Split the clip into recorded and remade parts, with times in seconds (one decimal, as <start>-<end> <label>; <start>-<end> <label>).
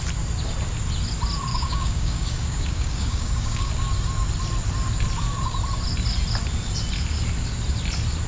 0.0-1.5 recorded; 1.5-3.7 remade; 3.7-8.3 recorded